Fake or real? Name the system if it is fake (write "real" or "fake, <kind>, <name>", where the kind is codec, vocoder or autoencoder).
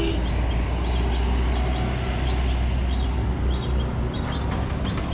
real